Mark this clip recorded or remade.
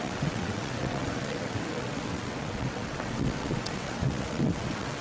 remade